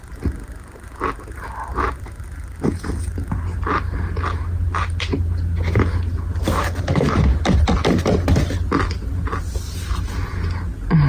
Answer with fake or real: real